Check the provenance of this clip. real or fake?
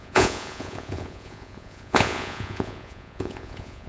fake